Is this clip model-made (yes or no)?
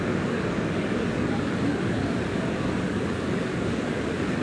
yes